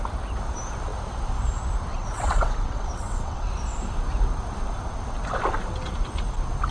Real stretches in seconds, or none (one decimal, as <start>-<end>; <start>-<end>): 0.0-1.9; 3.5-6.7